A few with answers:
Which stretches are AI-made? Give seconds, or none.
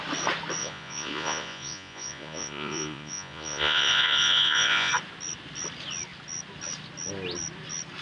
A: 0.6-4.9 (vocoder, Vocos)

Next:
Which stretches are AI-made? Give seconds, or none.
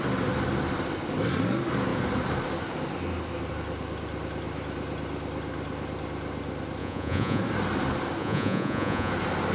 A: 6.8-7.4 (vocoder, Vocos); 8.2-9.1